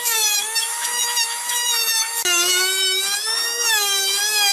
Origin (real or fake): fake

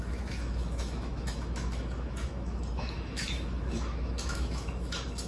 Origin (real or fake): fake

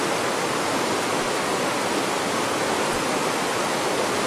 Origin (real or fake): real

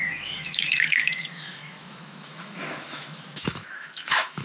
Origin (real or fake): fake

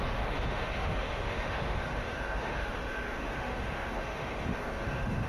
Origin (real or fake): fake